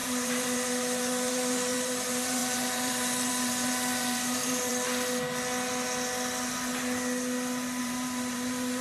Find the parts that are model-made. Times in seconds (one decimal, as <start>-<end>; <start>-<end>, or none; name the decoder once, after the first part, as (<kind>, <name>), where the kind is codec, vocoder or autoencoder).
0.0-4.7 (vocoder, BigVGAN v2); 7.8-8.8